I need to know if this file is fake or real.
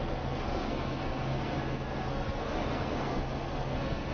fake